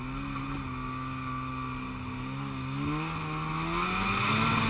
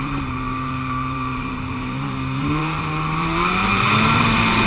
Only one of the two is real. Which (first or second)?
first